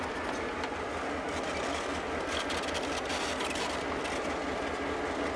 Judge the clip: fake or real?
real